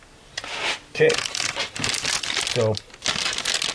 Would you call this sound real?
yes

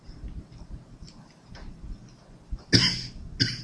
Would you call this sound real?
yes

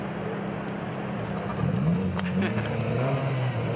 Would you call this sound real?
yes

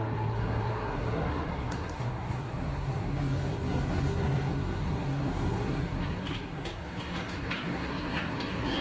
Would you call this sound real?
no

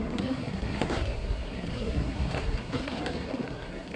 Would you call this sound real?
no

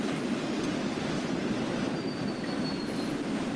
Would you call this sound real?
yes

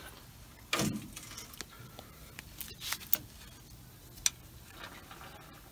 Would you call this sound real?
yes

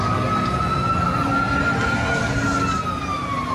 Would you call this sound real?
yes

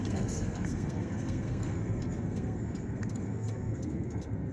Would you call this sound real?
no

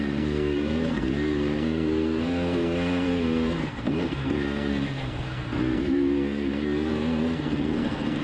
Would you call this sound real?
no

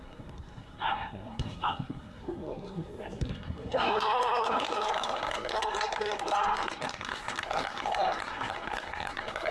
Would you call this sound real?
no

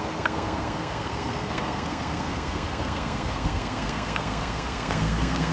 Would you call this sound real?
no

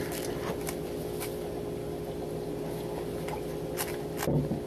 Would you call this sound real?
yes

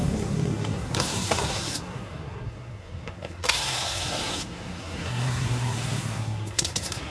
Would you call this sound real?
no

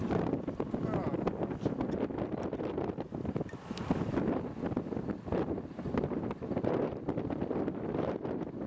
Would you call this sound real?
yes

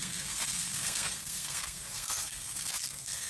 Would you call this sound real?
no